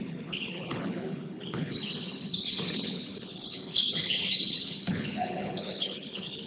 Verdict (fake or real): fake